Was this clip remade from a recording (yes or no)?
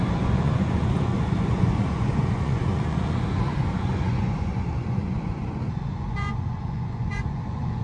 yes